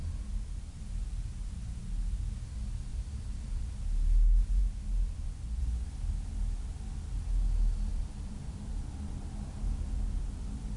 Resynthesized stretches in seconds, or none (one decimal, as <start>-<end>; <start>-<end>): 0.0-0.8; 2.9-3.6; 4.6-5.6; 7.9-10.8